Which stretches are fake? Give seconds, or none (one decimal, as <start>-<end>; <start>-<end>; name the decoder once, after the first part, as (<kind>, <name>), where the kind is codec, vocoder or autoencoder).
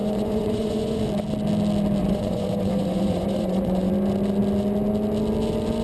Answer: 0.0-1.0 (vocoder, Vocos); 2.0-3.9